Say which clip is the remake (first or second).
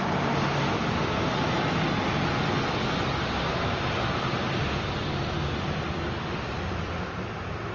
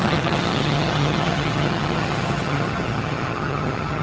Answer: second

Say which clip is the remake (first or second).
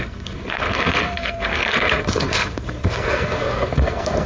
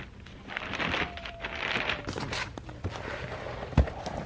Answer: first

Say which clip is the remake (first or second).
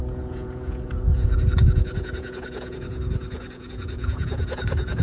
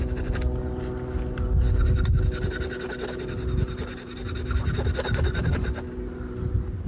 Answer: first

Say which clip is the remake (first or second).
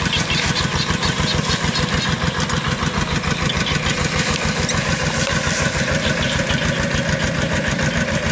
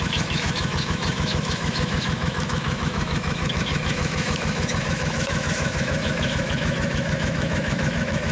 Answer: second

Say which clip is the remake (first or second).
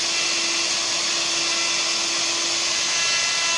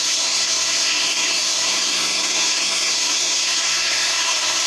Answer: second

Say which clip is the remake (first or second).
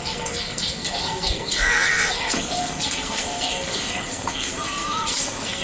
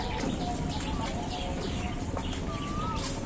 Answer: first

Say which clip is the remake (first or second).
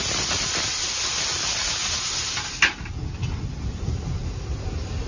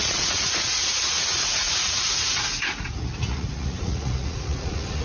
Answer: second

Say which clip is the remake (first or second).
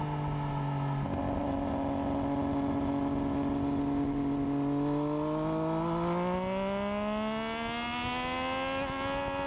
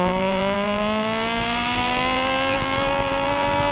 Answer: second